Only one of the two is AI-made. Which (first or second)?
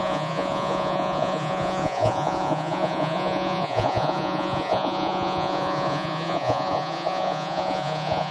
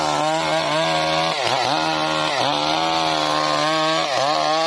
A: first